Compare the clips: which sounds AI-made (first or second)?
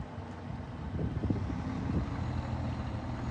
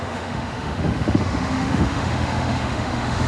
second